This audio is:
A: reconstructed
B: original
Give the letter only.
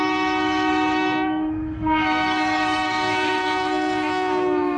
A